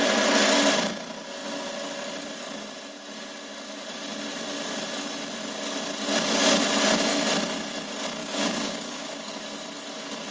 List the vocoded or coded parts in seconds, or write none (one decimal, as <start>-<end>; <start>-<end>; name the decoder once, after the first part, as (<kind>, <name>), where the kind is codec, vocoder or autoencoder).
8.2-9.2 (codec, DAC)